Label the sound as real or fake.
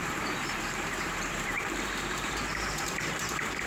fake